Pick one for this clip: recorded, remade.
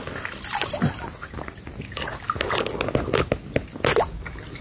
recorded